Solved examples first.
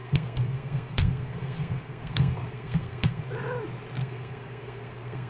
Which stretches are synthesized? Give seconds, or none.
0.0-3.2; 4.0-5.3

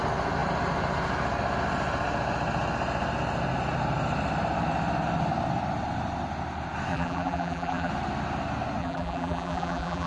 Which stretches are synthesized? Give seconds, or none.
6.9-7.9; 8.8-10.1

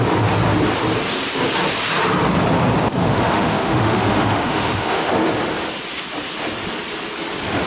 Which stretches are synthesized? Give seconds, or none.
3.0-5.1

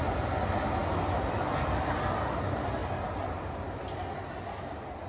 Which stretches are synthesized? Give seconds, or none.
none

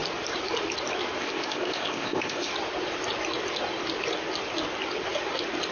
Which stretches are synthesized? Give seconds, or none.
1.2-2.5